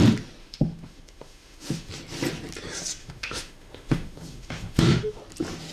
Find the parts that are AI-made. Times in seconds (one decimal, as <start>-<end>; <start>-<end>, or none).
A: 0.4-1.9; 3.0-5.2